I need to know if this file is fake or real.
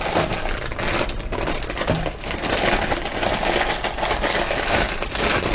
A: real